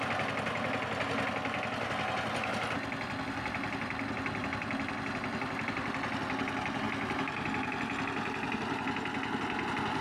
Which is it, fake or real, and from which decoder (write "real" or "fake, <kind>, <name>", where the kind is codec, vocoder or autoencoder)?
real